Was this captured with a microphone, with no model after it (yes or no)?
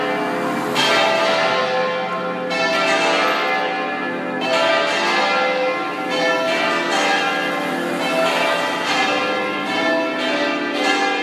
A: yes